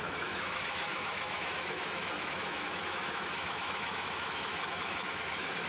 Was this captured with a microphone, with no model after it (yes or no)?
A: no